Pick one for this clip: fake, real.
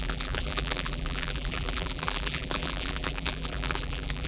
fake